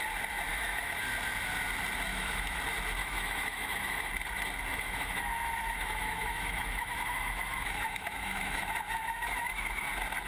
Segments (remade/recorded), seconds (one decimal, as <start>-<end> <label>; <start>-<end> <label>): 0.0-0.5 recorded; 0.5-1.0 remade; 1.0-2.1 recorded; 2.1-2.6 remade; 2.6-3.0 recorded; 3.0-4.1 remade; 4.1-4.7 recorded; 4.7-9.8 remade; 9.8-10.3 recorded